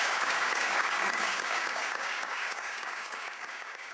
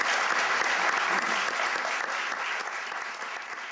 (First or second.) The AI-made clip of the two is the first